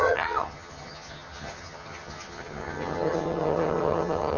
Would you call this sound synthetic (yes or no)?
yes